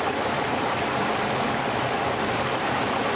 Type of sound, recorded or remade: recorded